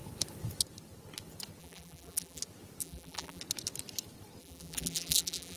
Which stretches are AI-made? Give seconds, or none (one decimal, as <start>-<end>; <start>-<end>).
1.6-2.4; 2.8-3.4; 4.4-5.6